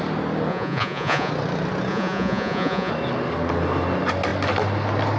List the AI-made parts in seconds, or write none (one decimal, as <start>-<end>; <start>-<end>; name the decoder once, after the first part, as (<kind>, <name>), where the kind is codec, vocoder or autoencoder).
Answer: 0.5-1.3 (vocoder, Vocos); 1.9-2.9